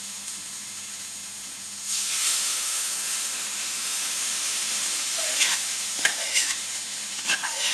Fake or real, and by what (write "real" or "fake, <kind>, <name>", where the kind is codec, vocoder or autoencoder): fake, autoencoder, DAC-VAE